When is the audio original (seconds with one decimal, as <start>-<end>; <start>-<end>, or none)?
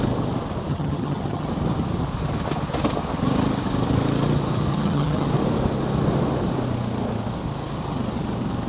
0.0-0.7; 1.5-4.7; 5.3-8.7